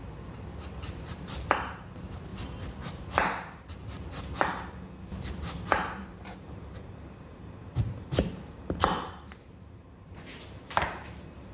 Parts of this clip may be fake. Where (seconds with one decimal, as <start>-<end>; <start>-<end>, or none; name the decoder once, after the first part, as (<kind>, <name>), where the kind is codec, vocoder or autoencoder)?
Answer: 0.0-2.3 (vocoder, BigVGAN v2); 5.3-11.5